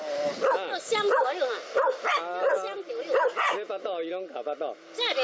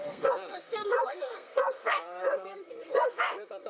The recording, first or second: first